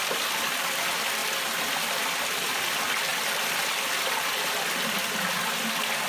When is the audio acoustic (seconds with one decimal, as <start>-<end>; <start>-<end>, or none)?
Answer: 0.0-6.1